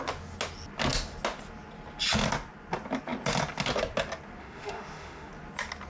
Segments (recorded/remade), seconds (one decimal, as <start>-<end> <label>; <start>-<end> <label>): 0.0-4.4 recorded; 4.4-5.3 remade; 5.3-5.9 recorded